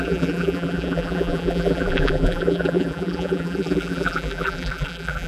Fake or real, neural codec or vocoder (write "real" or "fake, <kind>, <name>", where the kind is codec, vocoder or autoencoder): fake, vocoder, BigVGAN v2